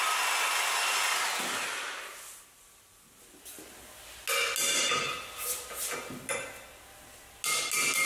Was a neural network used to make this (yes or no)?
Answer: no